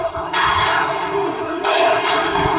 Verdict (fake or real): fake